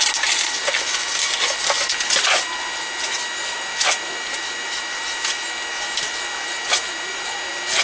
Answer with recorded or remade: recorded